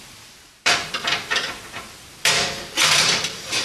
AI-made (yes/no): yes